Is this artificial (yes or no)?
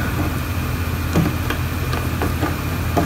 no